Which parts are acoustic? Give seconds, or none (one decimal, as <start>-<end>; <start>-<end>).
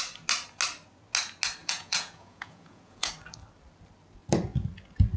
0.0-1.6; 3.1-5.2